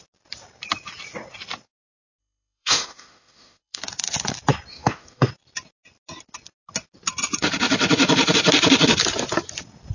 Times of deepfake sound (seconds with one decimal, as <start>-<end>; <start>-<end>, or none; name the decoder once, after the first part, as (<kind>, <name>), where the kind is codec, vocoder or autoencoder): 2.2-3.8 (autoencoder, DAC-VAE); 4.7-5.3

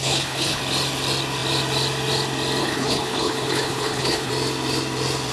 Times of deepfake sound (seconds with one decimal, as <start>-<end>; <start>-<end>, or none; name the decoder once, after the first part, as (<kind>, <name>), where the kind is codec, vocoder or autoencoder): 0.0-0.6 (codec, HILCodec); 2.6-4.3

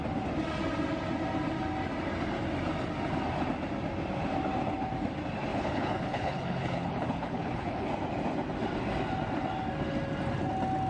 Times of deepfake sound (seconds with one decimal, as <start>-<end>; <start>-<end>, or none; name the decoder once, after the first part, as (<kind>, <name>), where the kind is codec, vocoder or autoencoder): 5.5-7.9 (codec, HILCodec)

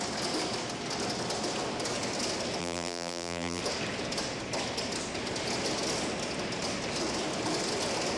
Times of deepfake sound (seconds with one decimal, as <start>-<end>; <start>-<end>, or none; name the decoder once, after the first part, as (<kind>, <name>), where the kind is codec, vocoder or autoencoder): 2.6-3.6 (vocoder, BigVGAN v2)

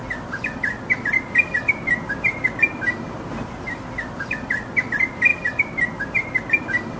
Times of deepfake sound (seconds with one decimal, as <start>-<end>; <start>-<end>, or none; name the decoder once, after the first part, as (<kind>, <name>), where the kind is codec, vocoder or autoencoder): none

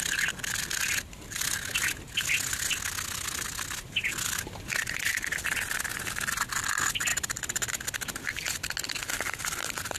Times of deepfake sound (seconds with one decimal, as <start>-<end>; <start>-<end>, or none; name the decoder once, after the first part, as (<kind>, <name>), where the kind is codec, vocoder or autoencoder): none